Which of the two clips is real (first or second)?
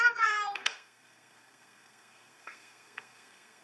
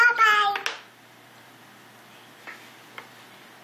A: second